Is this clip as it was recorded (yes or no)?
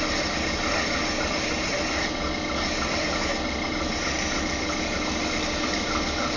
no